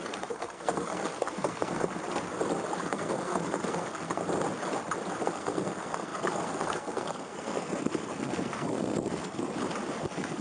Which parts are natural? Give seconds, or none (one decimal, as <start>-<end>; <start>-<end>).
2.0-2.8; 4.2-5.2; 9.4-10.0

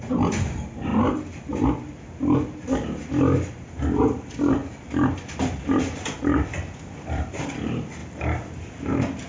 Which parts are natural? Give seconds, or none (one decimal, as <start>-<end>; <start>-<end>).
0.0-0.9; 1.9-4.6; 7.5-8.0; 8.9-9.3

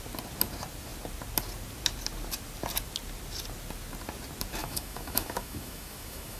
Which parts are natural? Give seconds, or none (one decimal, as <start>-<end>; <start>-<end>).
0.0-4.6

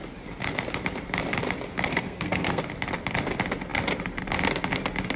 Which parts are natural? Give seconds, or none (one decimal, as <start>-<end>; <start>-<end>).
0.0-1.9; 2.6-5.2

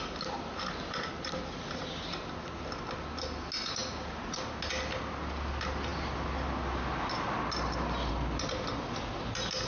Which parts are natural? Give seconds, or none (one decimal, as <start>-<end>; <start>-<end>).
0.0-9.7

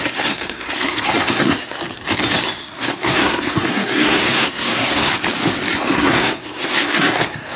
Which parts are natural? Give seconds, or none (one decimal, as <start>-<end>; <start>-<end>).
1.8-2.6; 5.1-5.7